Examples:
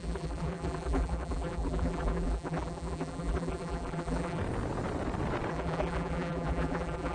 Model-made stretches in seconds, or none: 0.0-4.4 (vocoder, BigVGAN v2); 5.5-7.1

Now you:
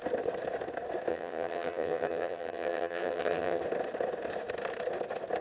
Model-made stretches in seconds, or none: 1.1-3.6 (vocoder, HiFi-GAN)

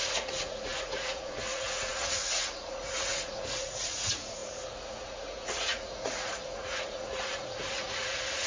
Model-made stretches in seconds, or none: 0.0-8.5 (vocoder, Vocos)

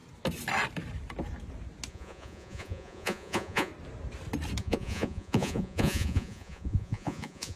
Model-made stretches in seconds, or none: 1.9-3.7 (vocoder, Vocos); 4.6-7.6

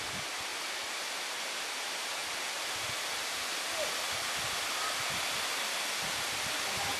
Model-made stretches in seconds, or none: 0.0-0.5 (vocoder, BigVGAN v2); 1.1-2.2; 4.4-7.0